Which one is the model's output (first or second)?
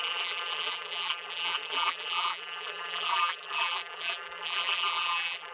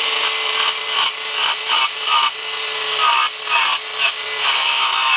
first